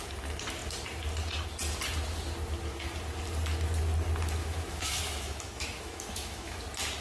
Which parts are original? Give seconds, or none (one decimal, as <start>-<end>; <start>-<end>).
0.0-4.4; 6.6-7.0